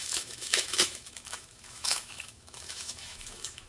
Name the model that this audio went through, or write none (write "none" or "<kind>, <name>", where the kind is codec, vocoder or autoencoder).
autoencoder, DAC-VAE